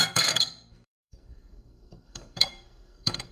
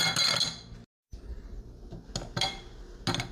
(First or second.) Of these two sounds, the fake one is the first